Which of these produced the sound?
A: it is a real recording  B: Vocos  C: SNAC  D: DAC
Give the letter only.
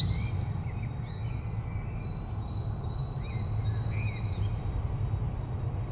A